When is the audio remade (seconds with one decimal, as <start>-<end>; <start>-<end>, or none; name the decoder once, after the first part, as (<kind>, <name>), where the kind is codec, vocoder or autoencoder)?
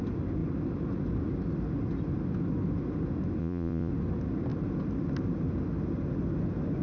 3.4-3.9 (vocoder, Vocos)